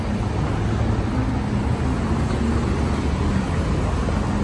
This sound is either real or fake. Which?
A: real